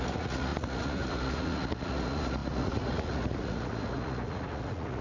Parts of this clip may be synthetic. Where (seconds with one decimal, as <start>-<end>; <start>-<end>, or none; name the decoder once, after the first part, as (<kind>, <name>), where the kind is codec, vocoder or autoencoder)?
0.0-5.0 (vocoder, Vocos)

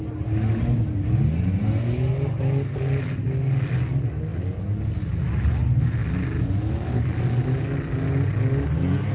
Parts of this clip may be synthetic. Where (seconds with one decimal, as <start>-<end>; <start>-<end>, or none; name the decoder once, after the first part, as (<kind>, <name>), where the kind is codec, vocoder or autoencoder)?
none

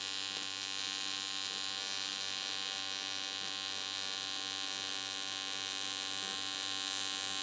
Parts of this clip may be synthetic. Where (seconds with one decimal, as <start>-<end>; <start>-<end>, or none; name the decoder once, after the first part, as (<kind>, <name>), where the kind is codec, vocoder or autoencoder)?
none